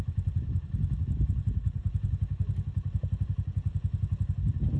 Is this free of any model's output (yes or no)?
yes